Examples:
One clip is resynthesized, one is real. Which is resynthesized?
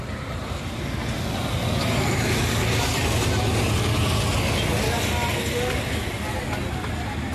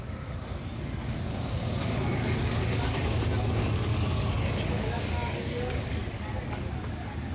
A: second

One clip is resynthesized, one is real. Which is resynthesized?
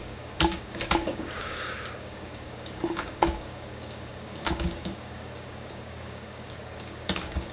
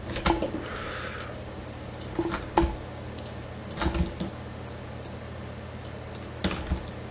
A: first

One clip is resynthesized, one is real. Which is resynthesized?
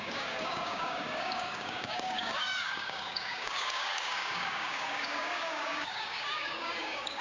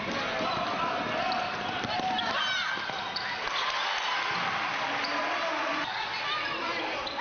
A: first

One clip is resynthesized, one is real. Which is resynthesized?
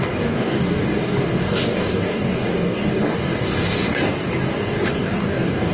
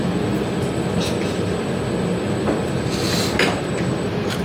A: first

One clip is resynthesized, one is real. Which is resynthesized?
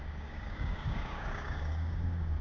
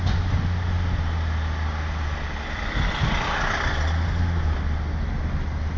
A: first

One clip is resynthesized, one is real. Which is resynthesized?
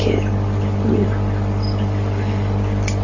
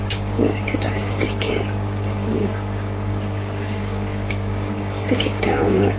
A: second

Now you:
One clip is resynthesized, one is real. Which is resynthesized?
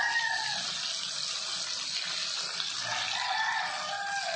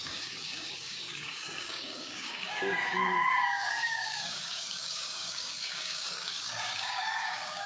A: second